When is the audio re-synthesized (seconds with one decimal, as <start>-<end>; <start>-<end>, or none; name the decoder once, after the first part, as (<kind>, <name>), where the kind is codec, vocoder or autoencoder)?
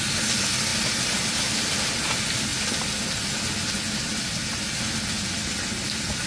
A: none